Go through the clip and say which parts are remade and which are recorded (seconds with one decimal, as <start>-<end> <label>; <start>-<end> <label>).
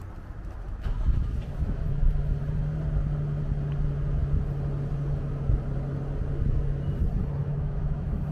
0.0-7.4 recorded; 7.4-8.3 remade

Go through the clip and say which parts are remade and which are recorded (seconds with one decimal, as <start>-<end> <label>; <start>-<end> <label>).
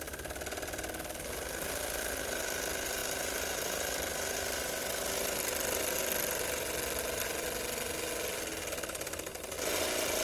0.0-10.2 recorded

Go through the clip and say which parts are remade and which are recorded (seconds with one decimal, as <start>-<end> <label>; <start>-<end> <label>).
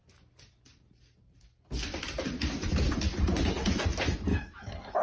0.0-4.3 recorded; 4.3-5.0 remade